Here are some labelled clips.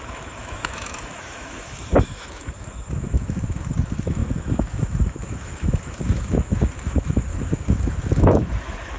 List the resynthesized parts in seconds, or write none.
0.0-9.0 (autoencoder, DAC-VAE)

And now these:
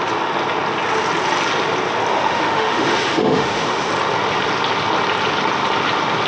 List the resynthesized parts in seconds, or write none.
2.1-3.9 (autoencoder, DAC-VAE)